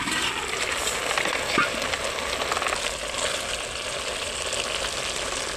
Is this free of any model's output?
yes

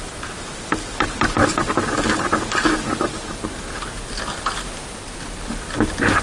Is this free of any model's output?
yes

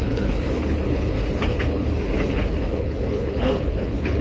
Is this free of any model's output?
no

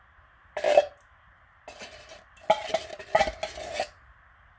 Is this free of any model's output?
yes